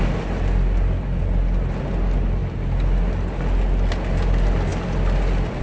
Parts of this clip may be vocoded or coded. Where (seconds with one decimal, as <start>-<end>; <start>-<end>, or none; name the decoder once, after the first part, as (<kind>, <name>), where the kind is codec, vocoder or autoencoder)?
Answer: none